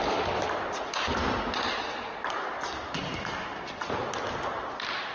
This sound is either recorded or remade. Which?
recorded